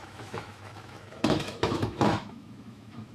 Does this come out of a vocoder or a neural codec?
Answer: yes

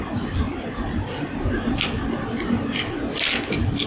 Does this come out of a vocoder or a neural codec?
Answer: no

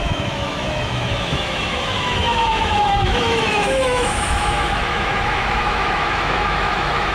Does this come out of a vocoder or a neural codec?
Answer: yes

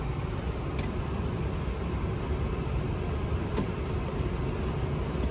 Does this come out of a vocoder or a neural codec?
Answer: no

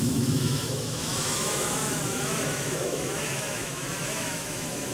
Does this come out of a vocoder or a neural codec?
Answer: yes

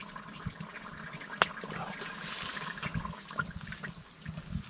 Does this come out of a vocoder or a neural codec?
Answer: no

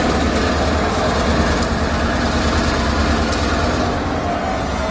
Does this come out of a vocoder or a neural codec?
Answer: no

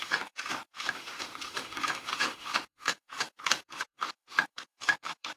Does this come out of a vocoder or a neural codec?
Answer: yes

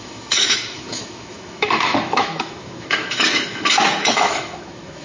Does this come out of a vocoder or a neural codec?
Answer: yes